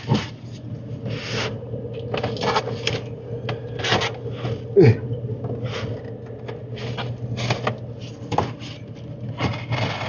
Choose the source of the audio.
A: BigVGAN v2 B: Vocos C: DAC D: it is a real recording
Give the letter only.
D